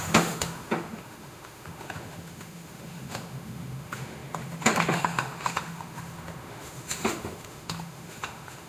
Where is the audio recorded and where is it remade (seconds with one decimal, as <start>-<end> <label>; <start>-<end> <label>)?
0.0-8.7 remade